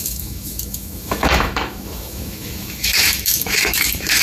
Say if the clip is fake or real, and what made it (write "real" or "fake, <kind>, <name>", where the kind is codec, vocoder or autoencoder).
fake, autoencoder, DAC-VAE